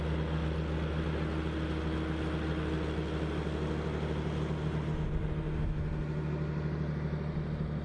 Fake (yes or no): no